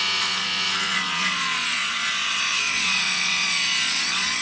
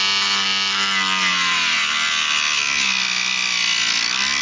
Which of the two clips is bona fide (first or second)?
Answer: second